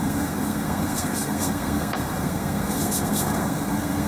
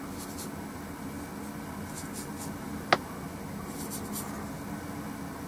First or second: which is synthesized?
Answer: first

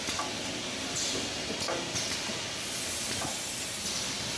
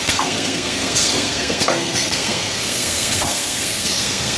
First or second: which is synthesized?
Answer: second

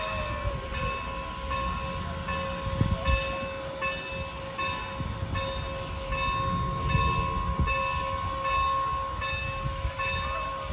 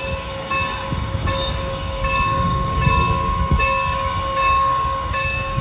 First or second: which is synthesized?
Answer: second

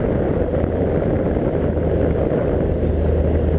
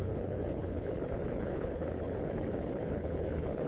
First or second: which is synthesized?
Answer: second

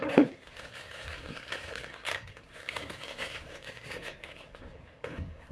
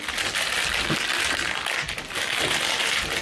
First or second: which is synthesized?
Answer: first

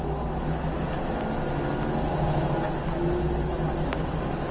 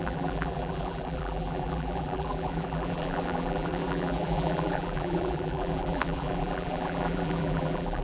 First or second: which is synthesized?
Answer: second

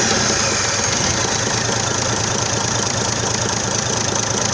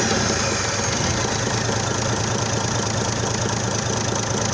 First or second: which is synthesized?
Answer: first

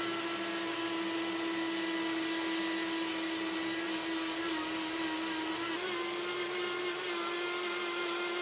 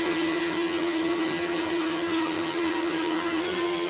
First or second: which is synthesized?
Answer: second